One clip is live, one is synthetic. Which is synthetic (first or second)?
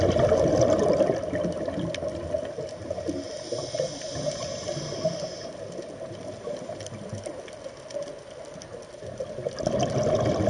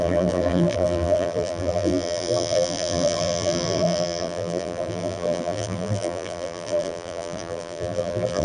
second